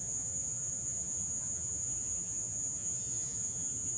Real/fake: fake